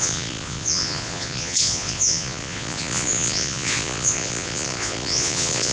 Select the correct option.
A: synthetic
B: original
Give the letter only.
A